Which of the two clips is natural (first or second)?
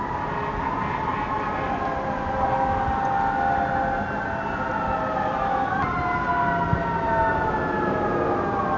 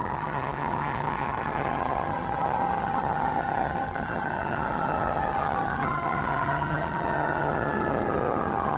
first